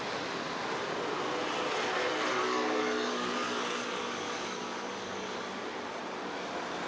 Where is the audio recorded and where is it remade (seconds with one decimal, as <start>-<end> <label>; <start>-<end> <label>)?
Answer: 0.0-2.4 recorded; 2.4-5.4 remade; 5.4-6.9 recorded